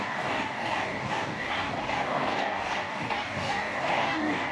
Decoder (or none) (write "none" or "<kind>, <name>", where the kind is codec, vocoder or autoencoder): codec, DAC